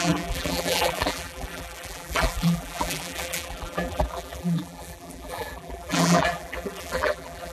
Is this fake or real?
fake